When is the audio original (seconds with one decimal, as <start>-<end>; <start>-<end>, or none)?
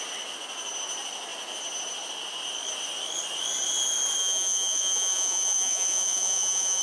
0.0-4.2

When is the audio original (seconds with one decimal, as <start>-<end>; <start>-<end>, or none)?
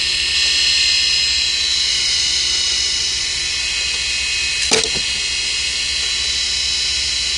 0.0-1.9; 3.5-7.4